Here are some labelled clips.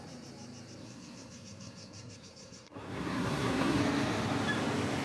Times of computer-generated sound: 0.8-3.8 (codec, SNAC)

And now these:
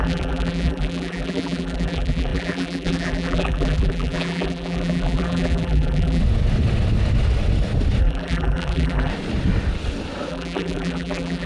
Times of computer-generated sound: 0.0-6.2 (vocoder, BigVGAN v2); 8.0-9.1; 10.3-11.5

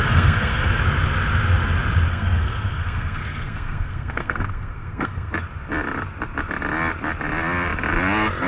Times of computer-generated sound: 0.0-0.8 (codec, SNAC); 2.1-5.3

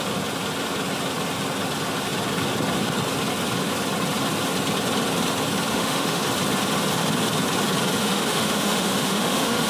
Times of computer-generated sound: 5.7-6.2 (autoencoder, DAC-VAE); 8.0-9.7

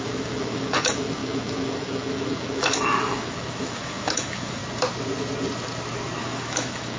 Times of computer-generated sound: 0.0-4.6 (autoencoder, DAC-VAE); 6.2-7.0

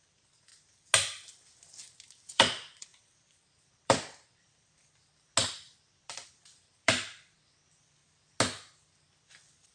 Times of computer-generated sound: 0.0-0.5 (vocoder, BigVGAN v2); 2.3-4.8; 5.5-8.0